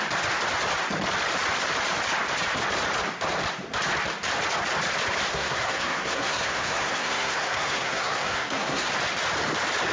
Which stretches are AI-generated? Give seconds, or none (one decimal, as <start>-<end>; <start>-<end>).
5.3-8.9